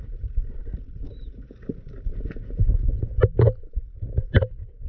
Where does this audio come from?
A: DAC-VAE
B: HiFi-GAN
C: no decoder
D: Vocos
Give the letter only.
C